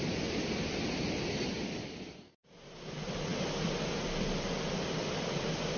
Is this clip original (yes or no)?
yes